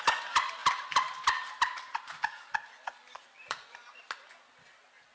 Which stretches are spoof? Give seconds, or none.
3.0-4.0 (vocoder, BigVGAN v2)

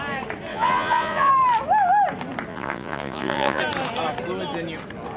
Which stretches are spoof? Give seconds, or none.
0.5-1.3 (vocoder, Vocos); 2.5-3.6

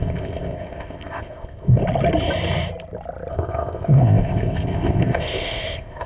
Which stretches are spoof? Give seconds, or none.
0.0-1.8 (codec, ZipCodec); 3.3-6.1

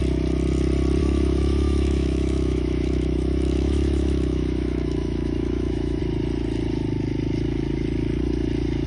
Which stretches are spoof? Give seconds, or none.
1.0-6.0 (autoencoder, DAC-VAE)

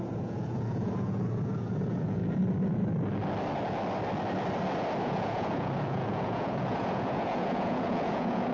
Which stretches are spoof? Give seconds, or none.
0.0-2.2 (vocoder, Vocos); 5.0-8.5

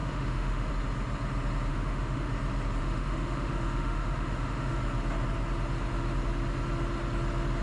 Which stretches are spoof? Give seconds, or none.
0.0-0.7 (autoencoder, DAC-VAE); 1.7-2.3; 2.8-4.8

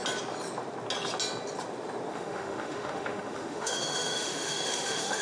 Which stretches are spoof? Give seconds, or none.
2.1-5.2 (autoencoder, DAC-VAE)